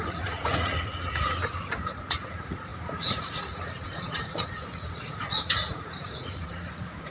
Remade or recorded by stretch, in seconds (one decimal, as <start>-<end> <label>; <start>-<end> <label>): 0.0-7.1 remade